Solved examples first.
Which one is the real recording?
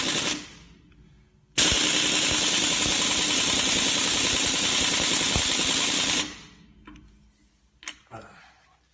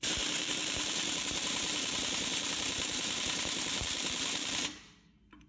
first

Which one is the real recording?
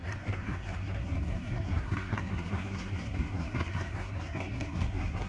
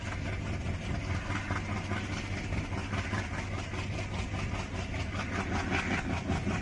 second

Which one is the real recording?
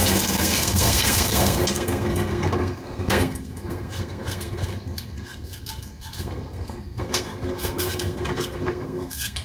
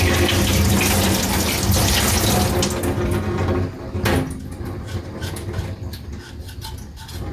second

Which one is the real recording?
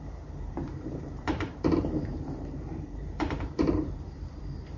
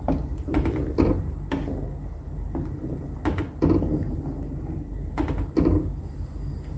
second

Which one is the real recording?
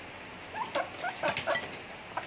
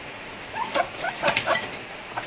first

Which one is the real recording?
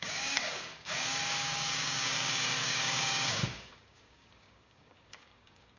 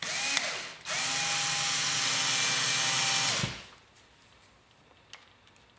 second